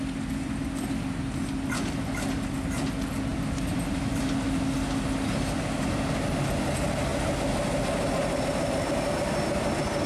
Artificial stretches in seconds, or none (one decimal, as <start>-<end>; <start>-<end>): 3.3-4.1